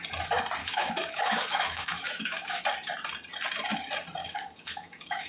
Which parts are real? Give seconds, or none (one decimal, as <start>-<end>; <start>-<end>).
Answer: 0.0-0.6; 2.6-4.2